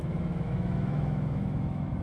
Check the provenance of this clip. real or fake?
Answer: fake